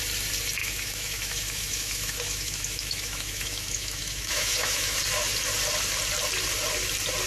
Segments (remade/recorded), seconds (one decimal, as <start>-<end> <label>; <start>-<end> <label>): 0.0-0.6 recorded; 0.6-5.0 remade; 5.0-7.3 recorded